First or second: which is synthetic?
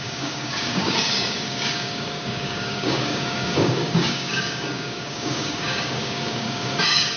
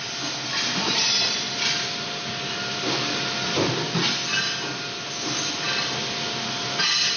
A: first